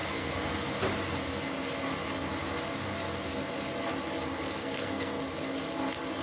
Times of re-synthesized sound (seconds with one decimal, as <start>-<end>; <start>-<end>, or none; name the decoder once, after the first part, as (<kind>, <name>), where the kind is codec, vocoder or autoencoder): 0.0-0.7 (codec, SNAC); 4.6-5.2